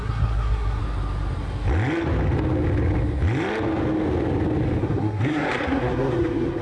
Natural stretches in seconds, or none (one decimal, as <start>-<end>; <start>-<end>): 0.8-4.8